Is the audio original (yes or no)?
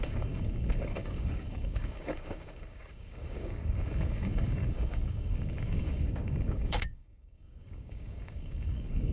no